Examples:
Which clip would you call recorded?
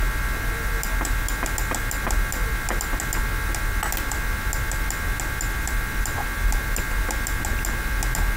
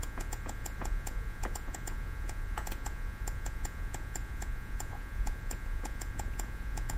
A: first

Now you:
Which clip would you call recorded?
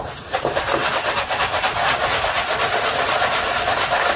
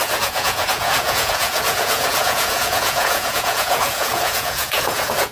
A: first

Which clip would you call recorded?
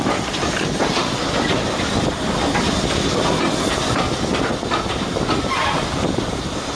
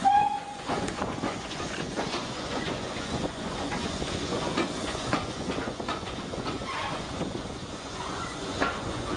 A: first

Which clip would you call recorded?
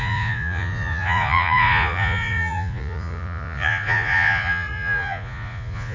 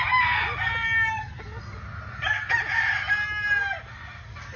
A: second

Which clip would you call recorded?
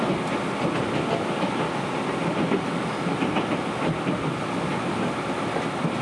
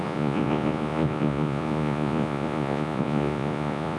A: first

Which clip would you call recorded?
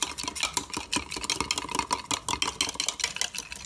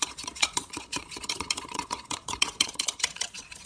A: first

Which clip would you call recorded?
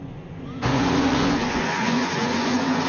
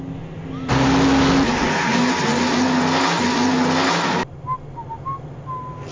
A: second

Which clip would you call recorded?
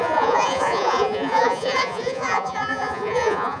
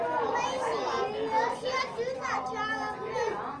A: second